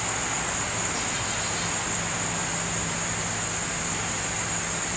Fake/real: real